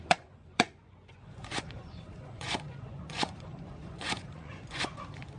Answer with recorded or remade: remade